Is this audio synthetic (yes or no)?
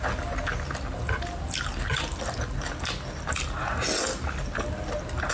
no